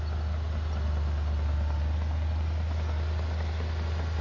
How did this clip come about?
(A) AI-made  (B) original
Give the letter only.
B